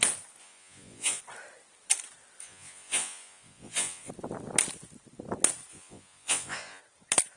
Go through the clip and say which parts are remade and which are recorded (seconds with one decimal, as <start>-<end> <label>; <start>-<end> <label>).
0.0-0.4 recorded; 0.4-1.2 remade; 1.2-2.4 recorded; 2.4-4.1 remade; 4.1-5.7 recorded; 5.7-6.8 remade; 6.8-7.4 recorded

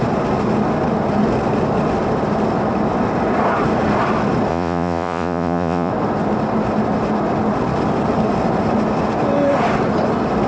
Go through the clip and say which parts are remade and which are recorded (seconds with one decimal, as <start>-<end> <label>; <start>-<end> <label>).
0.0-4.5 recorded; 4.5-5.9 remade; 5.9-10.5 recorded

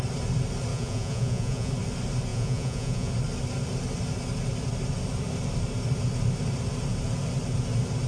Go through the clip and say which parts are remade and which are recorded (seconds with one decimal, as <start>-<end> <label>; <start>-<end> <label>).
0.0-0.7 recorded; 0.7-1.7 remade; 1.7-2.3 recorded; 2.3-3.1 remade; 3.1-8.1 recorded

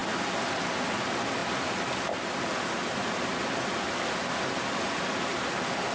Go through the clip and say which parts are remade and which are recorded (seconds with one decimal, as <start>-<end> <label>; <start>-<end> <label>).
0.0-5.9 recorded

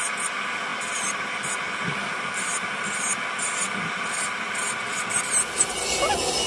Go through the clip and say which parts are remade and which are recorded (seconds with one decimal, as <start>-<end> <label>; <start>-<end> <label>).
0.0-6.5 recorded